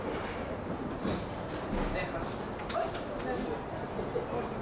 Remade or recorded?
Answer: recorded